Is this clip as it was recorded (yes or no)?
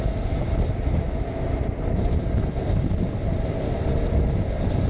yes